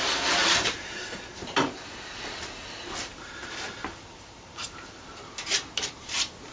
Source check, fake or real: fake